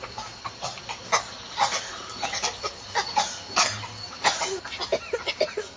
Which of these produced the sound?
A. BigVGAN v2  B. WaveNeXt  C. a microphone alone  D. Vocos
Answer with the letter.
C